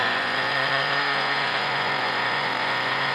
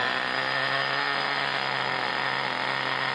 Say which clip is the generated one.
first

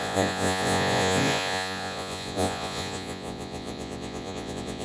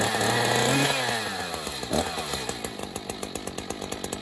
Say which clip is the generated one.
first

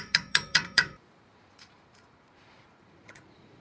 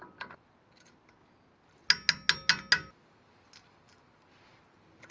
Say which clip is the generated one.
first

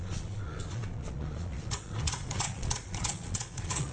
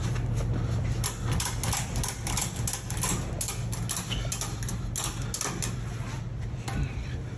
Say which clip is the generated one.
first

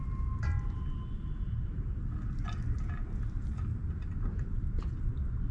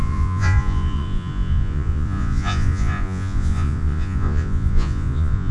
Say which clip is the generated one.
second